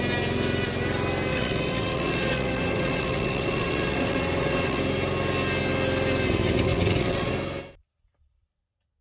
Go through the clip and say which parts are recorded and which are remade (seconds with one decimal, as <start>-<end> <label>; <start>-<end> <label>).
0.0-1.3 recorded; 1.3-4.8 remade; 4.8-6.7 recorded; 6.7-7.3 remade; 7.3-9.0 recorded